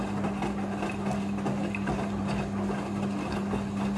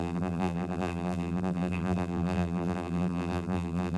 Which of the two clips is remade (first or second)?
second